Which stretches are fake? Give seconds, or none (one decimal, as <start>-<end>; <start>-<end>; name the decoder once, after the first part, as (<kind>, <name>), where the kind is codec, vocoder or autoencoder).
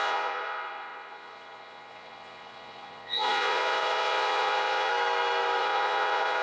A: 0.0-4.9 (vocoder, Vocos); 5.6-6.4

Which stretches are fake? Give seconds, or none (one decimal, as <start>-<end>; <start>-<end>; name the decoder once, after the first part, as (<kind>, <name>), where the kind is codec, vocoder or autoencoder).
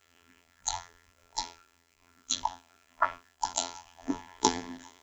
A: 0.0-5.0 (vocoder, BigVGAN v2)